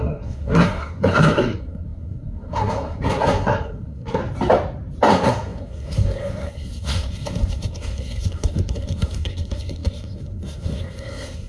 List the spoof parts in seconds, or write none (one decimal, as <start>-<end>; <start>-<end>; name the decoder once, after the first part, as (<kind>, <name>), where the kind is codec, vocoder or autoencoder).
0.0-4.2 (codec, SNAC); 5.1-11.5